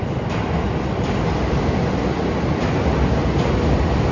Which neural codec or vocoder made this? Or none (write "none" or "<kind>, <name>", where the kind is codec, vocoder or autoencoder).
none